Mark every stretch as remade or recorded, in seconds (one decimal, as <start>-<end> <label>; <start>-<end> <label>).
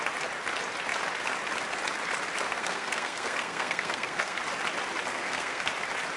0.0-2.6 recorded; 2.6-4.4 remade; 4.4-5.1 recorded; 5.1-5.7 remade; 5.7-6.2 recorded